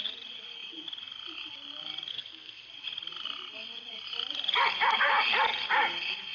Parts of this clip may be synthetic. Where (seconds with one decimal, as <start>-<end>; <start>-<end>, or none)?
2.1-2.7